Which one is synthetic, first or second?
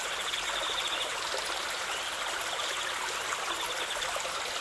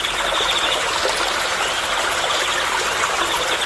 first